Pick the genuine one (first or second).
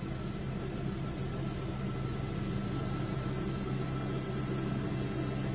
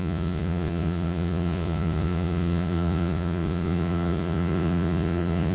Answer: first